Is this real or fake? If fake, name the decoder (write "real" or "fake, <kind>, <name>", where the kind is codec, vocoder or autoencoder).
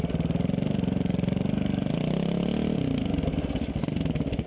real